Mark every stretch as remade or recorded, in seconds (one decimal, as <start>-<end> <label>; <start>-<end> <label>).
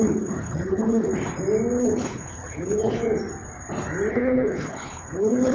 0.0-1.1 remade; 1.1-1.8 recorded; 1.8-3.0 remade; 3.0-4.1 recorded; 4.1-5.5 remade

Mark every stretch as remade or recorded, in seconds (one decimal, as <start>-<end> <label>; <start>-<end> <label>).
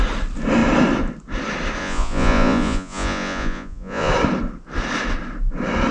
0.0-1.8 recorded; 1.8-4.1 remade; 4.1-5.9 recorded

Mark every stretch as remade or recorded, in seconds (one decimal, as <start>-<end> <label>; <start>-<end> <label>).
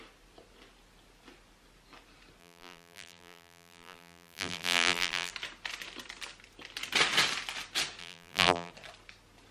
0.0-2.4 recorded; 2.4-5.3 remade; 5.3-8.0 recorded; 8.0-8.7 remade; 8.7-9.5 recorded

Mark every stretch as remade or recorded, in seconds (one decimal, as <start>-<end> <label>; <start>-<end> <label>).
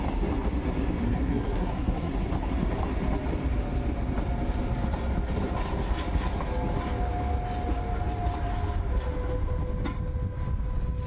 0.0-1.0 recorded; 1.0-2.1 remade; 2.1-11.1 recorded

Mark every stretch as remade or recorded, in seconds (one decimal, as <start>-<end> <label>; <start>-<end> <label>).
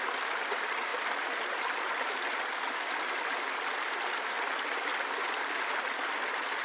0.0-6.6 recorded